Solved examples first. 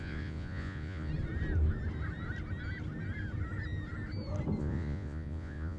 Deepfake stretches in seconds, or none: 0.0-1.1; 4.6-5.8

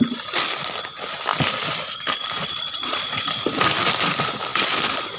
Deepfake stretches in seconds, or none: 2.4-3.2

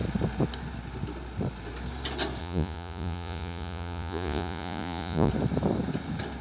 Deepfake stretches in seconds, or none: 2.4-5.3

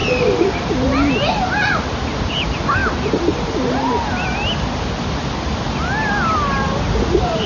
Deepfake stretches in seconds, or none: none